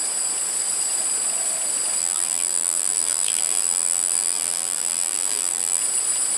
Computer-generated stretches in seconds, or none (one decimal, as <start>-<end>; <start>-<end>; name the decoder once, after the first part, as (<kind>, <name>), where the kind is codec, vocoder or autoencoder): 2.0-5.8 (vocoder, BigVGAN v2)